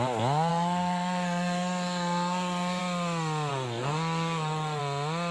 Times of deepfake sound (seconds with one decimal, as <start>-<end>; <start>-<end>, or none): 0.5-2.8; 3.5-4.8